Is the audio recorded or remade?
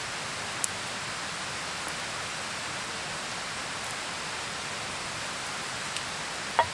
recorded